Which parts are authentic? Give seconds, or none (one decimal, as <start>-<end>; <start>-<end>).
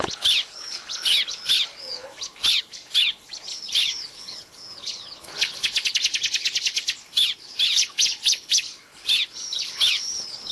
none